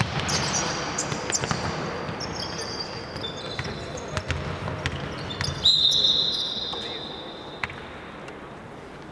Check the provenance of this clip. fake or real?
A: real